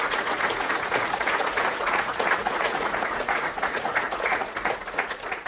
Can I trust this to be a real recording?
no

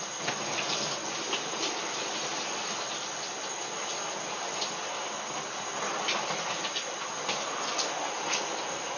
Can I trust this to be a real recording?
yes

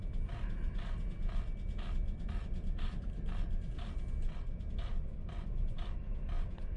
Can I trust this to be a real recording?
yes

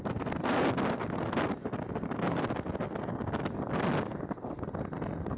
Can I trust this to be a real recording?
yes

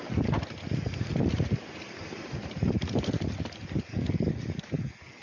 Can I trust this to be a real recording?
yes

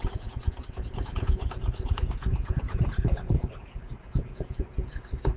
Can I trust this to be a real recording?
no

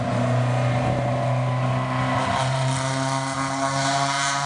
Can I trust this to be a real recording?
yes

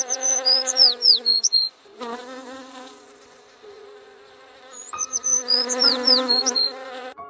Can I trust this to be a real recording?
no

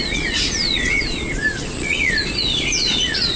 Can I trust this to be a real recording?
no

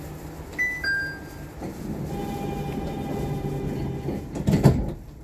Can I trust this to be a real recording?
yes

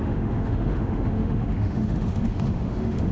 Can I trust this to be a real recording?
no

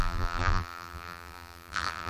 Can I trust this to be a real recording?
no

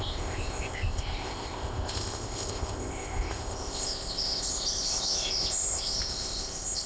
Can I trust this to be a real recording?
no